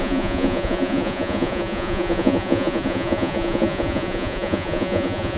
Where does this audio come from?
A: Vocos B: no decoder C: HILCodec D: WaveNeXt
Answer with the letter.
A